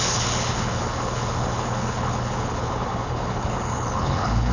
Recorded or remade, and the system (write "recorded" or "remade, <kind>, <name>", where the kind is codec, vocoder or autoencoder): remade, codec, HILCodec